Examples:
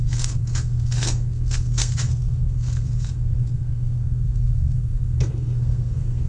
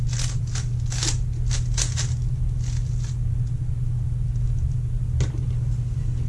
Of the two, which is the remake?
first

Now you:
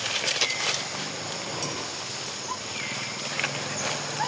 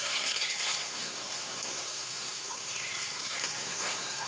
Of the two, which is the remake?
second